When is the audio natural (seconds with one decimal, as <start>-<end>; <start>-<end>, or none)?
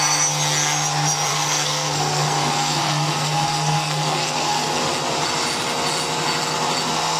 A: 0.0-1.3; 4.8-7.2